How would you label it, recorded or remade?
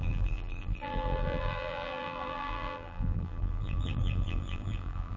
remade